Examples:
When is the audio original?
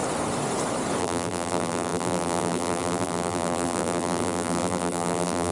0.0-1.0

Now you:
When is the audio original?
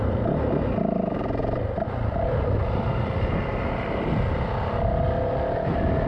0.0-6.1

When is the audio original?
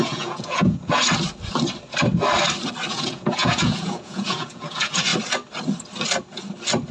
1.0-2.9; 5.1-6.9